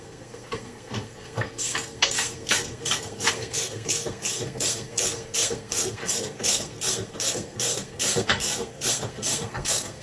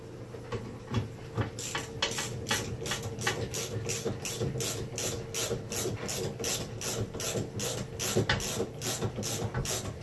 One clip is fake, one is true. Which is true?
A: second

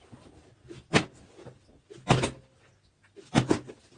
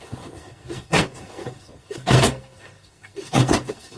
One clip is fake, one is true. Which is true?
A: first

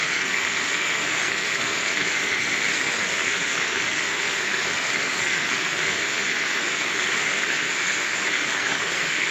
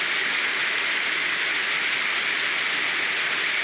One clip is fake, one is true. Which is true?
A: second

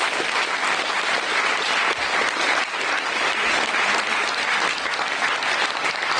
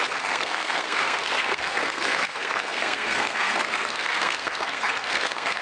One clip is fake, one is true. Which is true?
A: first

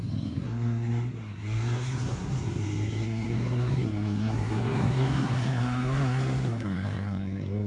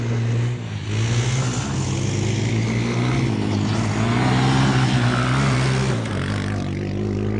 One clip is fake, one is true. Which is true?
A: second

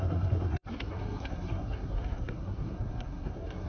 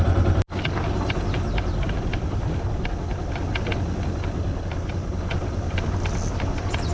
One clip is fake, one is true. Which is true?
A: second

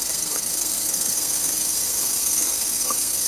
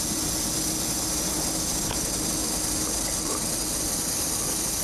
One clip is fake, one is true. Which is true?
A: second